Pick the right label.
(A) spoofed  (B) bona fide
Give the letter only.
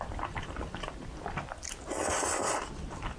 B